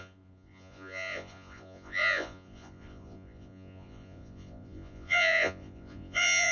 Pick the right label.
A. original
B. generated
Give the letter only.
B